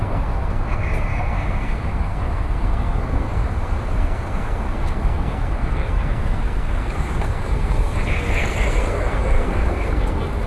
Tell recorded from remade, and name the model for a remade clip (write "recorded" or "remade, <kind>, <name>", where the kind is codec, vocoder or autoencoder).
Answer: remade, codec, SNAC